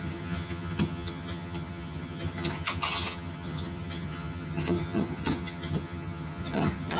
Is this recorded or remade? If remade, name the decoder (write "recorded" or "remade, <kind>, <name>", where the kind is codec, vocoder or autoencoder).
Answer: remade, vocoder, HiFi-GAN